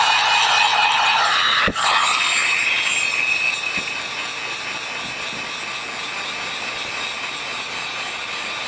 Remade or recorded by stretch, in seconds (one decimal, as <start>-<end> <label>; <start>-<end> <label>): 0.0-0.7 recorded; 0.7-1.9 remade; 1.9-8.7 recorded